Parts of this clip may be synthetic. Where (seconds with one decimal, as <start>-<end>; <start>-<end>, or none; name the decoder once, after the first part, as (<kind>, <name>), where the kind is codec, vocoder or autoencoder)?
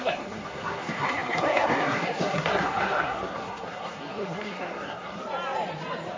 0.0-5.2 (codec, SNAC)